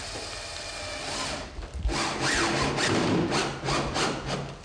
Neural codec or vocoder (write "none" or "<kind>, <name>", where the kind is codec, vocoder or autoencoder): none